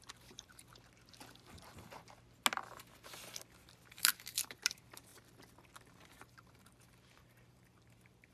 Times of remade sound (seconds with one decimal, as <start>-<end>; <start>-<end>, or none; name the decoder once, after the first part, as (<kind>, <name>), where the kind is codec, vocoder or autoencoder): 0.0-0.7 (vocoder, BigVGAN v2); 4.0-5.1; 5.8-8.3